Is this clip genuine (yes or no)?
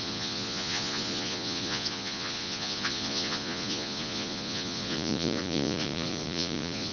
no